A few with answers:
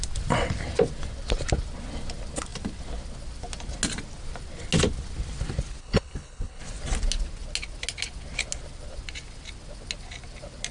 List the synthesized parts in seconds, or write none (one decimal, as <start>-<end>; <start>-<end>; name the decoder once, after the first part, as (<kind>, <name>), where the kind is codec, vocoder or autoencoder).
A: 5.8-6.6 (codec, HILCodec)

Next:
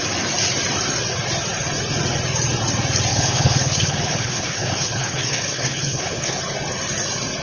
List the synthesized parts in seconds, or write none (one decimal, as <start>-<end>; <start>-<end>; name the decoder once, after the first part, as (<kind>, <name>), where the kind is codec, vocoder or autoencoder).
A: 3.1-6.4 (codec, HILCodec)

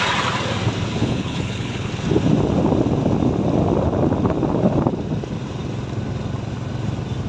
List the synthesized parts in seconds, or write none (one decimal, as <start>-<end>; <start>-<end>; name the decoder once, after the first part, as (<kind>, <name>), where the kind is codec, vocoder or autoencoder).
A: 1.0-1.9 (codec, HILCodec)